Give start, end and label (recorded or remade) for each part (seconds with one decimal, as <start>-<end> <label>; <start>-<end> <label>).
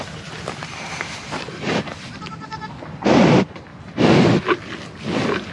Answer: 0.0-3.7 remade; 3.7-5.0 recorded; 5.0-5.5 remade